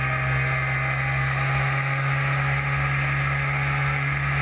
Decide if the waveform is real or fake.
real